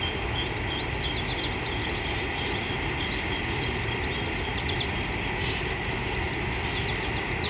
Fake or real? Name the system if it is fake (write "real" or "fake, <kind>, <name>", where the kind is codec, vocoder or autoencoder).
real